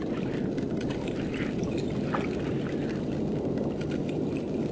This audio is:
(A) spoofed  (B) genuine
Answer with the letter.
B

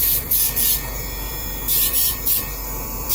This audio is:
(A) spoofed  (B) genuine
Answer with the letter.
A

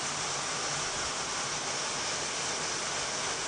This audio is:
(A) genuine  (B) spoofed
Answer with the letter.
A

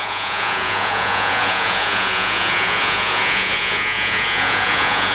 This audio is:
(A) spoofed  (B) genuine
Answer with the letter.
A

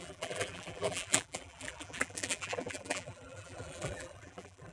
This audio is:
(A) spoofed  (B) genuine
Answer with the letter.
A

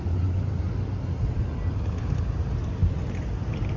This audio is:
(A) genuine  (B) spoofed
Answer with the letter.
A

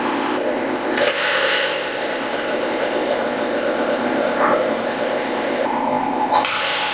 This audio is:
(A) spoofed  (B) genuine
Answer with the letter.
A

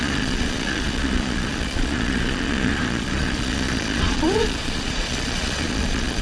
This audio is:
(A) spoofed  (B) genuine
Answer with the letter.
A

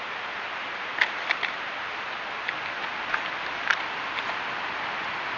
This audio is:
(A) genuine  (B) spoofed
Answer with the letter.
A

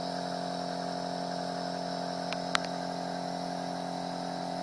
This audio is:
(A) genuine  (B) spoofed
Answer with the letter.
A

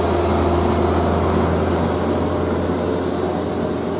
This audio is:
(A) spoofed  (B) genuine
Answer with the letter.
B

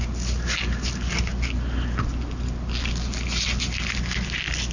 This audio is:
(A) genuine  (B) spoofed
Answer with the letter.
A